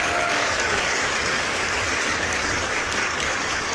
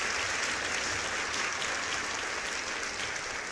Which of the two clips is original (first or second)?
second